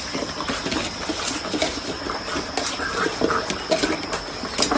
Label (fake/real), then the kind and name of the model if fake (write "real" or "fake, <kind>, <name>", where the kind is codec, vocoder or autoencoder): real